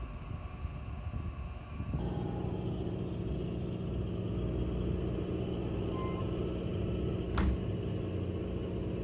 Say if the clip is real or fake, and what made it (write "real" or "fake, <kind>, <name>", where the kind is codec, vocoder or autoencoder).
real